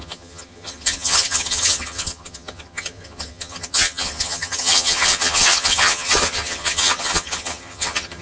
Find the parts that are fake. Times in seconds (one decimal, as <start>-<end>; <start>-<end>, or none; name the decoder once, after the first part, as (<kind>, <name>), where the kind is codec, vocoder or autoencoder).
0.0-8.2 (vocoder, HiFi-GAN)